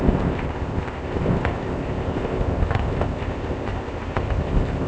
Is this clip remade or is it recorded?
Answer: remade